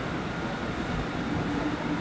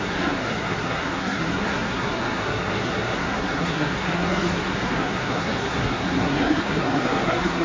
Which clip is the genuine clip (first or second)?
first